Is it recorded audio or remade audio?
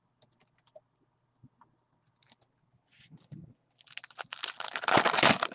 recorded